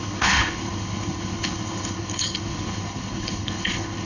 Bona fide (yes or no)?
no